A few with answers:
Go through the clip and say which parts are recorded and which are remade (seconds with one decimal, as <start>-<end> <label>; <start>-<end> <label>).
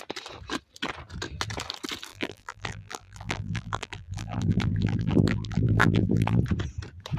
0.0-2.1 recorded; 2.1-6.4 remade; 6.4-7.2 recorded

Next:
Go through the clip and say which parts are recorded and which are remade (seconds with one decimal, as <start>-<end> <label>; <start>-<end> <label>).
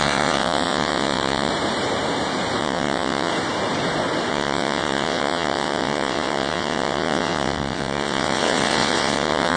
0.0-1.5 remade; 1.5-2.6 recorded; 2.6-3.3 remade; 3.3-4.3 recorded; 4.3-9.6 remade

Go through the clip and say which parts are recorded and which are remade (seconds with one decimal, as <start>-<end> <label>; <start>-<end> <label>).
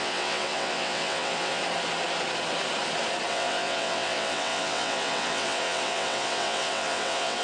0.0-1.6 remade; 1.6-3.3 recorded; 3.3-7.4 remade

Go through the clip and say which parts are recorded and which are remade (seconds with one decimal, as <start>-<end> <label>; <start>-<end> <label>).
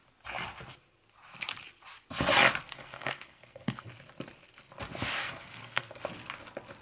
0.0-2.6 recorded; 2.6-3.9 remade; 3.9-5.2 recorded; 5.2-6.0 remade; 6.0-6.8 recorded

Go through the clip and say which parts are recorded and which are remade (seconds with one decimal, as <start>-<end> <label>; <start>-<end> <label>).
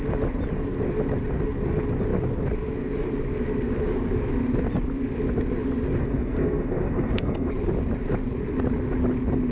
0.0-6.0 recorded; 6.0-7.5 remade; 7.5-9.5 recorded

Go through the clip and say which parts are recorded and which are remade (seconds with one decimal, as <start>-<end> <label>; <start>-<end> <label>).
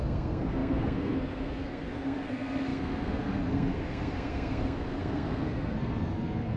0.0-6.6 remade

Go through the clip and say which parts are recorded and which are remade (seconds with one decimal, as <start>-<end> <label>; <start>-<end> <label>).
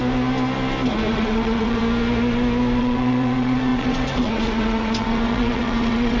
0.0-1.1 recorded; 1.1-1.8 remade; 1.8-2.8 recorded; 2.8-6.2 remade